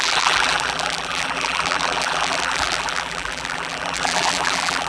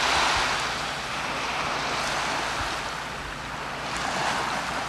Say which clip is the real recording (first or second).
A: second